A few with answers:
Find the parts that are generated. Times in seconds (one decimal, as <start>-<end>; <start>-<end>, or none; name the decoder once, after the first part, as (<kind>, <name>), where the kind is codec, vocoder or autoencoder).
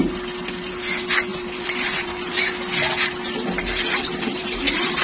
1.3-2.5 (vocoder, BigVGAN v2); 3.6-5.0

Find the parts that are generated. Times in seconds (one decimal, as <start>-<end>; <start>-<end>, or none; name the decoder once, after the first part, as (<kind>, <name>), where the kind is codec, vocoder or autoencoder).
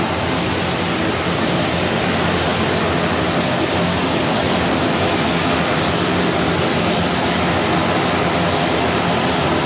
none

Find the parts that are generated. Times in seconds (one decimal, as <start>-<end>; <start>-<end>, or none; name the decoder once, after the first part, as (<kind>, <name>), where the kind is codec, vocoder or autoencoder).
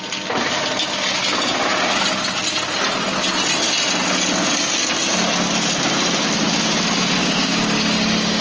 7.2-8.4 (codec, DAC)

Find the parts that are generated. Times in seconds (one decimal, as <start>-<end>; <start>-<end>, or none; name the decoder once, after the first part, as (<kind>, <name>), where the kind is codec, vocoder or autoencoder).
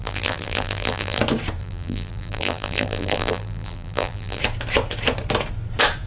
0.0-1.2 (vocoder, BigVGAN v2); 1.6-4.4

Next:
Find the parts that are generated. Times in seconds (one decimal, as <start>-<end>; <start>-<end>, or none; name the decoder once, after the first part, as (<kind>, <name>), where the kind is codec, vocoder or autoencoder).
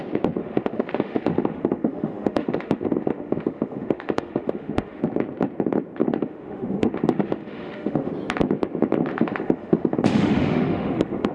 0.4-5.0 (autoencoder, DAC-VAE); 6.0-8.1; 9.1-11.3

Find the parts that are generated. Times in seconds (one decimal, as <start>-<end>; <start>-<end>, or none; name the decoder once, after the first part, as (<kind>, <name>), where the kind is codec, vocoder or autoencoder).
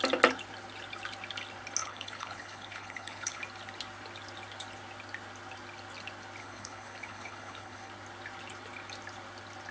1.8-3.4 (codec, HILCodec); 6.4-7.9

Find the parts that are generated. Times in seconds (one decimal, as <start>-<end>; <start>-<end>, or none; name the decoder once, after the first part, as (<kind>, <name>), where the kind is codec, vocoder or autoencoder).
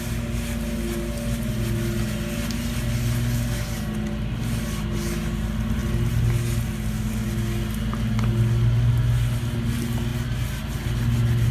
none